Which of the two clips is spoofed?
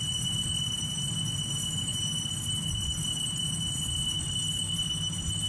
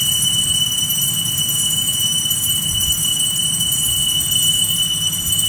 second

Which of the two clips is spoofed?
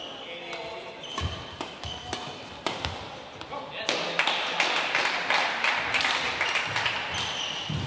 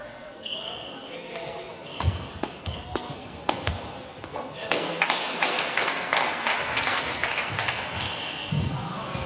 second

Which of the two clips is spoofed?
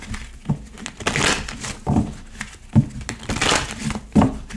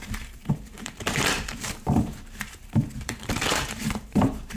second